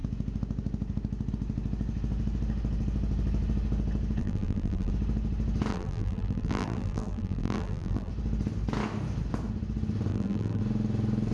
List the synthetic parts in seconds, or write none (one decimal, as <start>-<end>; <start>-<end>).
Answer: 4.2-4.9; 5.7-8.1; 10.1-10.6